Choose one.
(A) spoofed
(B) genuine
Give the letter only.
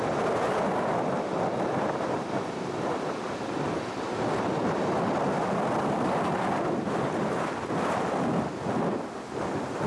B